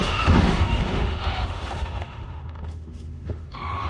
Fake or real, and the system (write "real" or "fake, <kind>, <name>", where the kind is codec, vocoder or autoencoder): fake, autoencoder, DAC-VAE